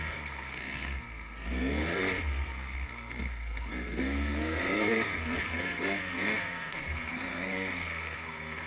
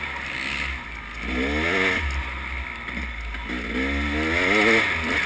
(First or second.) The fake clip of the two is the first